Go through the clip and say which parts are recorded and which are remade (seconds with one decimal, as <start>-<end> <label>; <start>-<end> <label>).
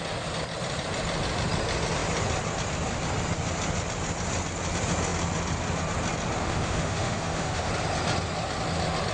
0.0-6.4 recorded; 6.4-7.7 remade; 7.7-9.1 recorded